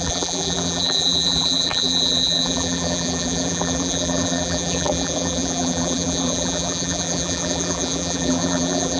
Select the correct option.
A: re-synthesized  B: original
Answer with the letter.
A